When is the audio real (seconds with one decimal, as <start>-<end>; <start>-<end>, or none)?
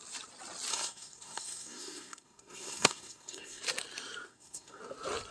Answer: 0.0-0.7; 3.6-4.3; 4.8-5.3